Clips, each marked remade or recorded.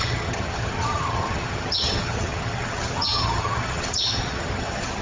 remade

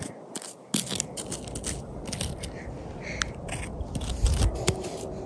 recorded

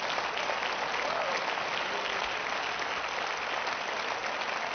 recorded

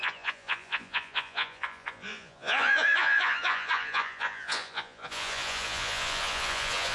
remade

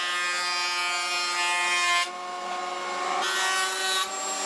recorded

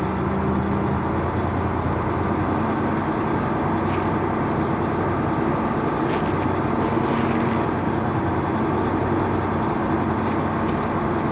recorded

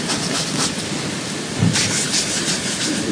recorded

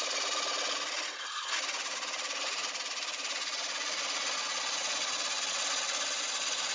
recorded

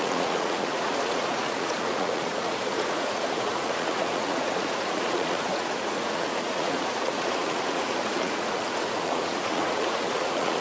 remade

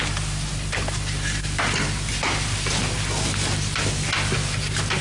recorded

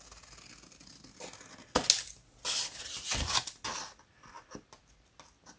recorded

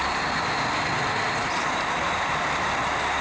recorded